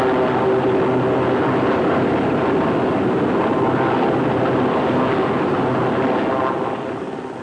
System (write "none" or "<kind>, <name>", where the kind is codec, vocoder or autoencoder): none